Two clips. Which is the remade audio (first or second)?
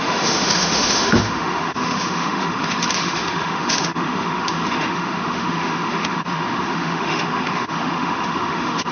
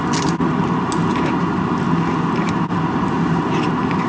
first